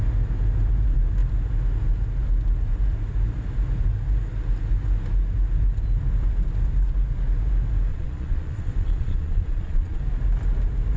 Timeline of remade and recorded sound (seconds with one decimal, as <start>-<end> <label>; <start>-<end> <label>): 0.0-7.9 recorded; 7.9-10.0 remade; 10.0-11.0 recorded